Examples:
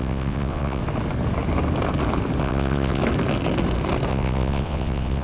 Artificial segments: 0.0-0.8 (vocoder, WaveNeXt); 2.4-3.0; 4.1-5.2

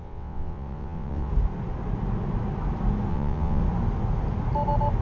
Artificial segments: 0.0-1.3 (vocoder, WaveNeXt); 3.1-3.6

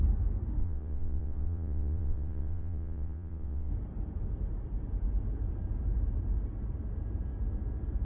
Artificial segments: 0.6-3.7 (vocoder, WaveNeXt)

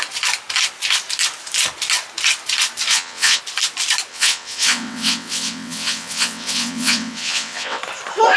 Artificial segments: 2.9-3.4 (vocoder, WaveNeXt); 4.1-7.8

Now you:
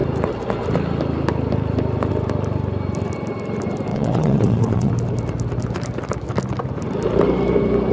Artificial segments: 3.9-4.9 (vocoder, WaveNeXt)

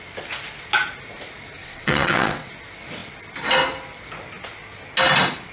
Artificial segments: 1.6-2.5 (vocoder, WaveNeXt)

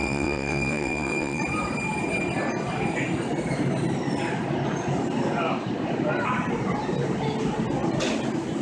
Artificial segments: 0.0-1.4 (vocoder, WaveNeXt)

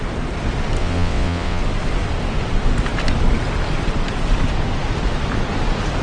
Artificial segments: 0.8-1.6 (vocoder, WaveNeXt)